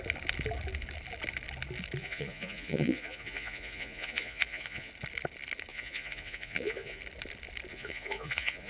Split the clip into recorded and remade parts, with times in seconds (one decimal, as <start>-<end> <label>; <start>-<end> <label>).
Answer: 0.0-2.0 recorded; 2.0-4.9 remade; 4.9-5.7 recorded; 5.7-7.0 remade; 7.0-7.7 recorded; 7.7-8.7 remade